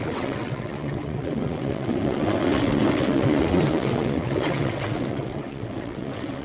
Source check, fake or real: fake